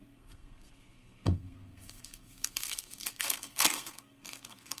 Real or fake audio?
fake